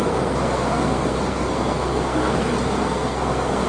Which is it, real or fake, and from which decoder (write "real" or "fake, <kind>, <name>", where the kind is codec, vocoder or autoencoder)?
fake, codec, SNAC